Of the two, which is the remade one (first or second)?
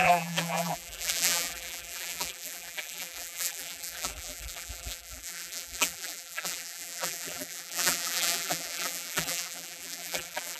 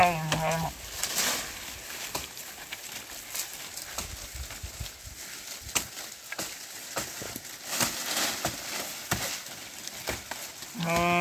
first